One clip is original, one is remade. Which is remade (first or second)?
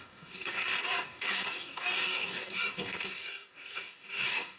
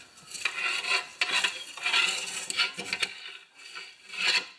first